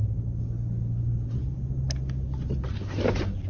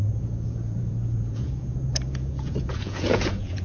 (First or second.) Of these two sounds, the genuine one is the first